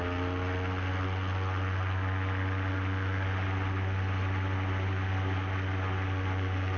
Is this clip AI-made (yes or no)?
no